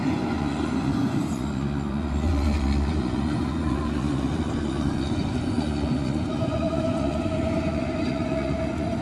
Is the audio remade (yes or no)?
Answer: yes